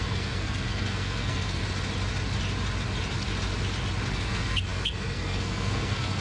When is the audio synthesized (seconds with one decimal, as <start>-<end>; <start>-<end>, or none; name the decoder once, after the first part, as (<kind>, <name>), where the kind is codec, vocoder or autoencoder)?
0.0-1.6 (codec, SNAC); 4.1-6.2